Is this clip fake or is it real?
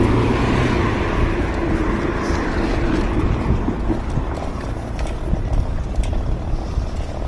real